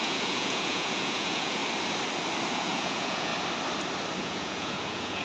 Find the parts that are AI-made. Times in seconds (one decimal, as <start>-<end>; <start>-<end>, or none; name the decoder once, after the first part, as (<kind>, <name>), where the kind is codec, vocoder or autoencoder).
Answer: 0.0-1.6 (vocoder, Vocos); 2.5-3.3; 4.2-5.2